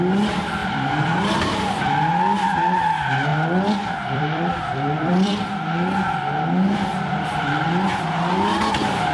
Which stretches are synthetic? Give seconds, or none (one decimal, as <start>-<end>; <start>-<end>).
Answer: 0.6-1.2; 3.3-5.7; 6.9-8.0